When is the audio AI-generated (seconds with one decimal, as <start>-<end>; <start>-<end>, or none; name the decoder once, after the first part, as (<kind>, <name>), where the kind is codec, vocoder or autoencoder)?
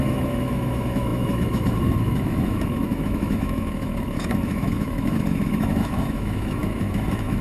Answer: 0.0-7.4 (autoencoder, DAC-VAE)